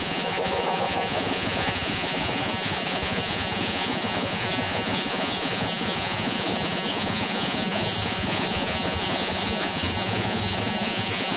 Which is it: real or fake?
fake